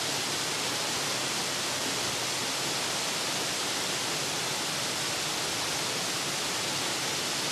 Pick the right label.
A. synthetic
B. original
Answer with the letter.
B